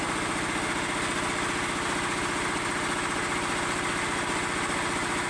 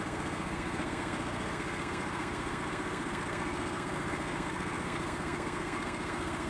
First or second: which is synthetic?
second